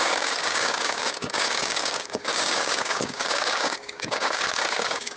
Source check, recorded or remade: remade